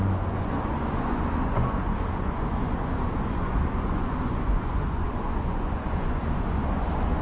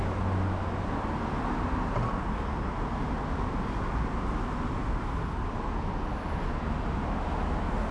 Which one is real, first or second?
second